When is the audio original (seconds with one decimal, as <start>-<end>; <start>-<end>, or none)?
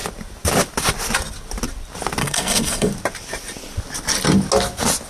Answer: 0.0-2.2; 2.9-5.1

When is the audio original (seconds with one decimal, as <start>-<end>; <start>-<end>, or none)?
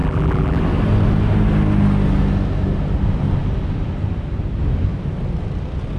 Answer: 0.6-6.0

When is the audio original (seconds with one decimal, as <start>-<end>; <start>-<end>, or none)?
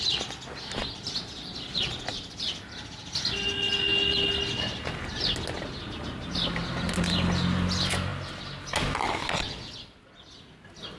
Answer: 0.0-11.0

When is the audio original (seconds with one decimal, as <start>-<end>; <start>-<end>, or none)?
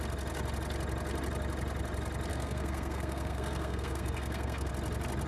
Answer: 0.0-2.3; 4.7-5.3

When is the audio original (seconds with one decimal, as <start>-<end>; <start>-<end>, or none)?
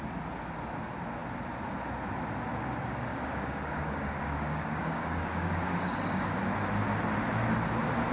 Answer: 0.0-3.1; 6.4-8.1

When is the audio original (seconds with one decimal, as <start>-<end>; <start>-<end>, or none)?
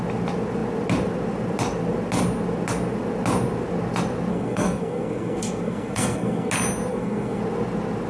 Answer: 0.0-4.3; 6.5-6.9; 7.4-8.1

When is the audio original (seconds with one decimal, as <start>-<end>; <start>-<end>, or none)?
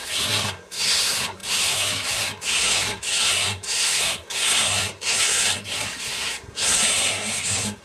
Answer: none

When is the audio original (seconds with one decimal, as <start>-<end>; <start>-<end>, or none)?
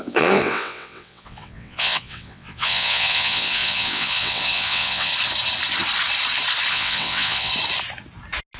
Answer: 5.1-6.7; 7.5-8.6